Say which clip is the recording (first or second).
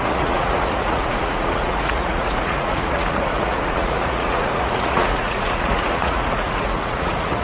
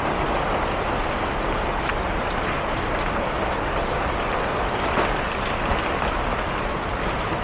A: second